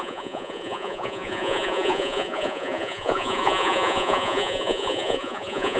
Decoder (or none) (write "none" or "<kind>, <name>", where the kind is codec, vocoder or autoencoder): vocoder, Vocos